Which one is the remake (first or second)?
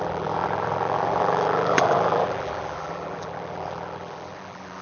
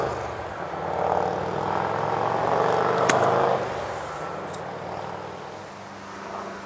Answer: first